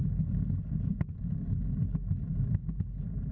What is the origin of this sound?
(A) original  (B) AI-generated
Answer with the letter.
A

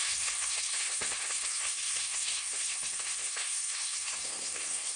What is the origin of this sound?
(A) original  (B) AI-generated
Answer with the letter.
B